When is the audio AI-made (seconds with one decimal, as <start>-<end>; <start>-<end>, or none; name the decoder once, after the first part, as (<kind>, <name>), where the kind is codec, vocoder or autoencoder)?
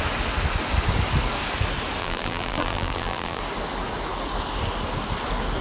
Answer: 2.0-3.4 (vocoder, BigVGAN v2)